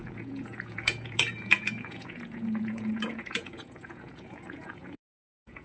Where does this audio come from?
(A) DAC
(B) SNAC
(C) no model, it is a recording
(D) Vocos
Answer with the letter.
D